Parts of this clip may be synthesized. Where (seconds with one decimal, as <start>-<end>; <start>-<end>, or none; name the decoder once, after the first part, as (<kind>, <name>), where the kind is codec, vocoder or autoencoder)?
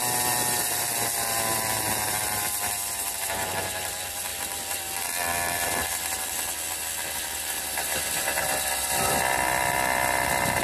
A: none